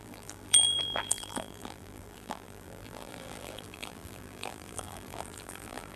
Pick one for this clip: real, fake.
fake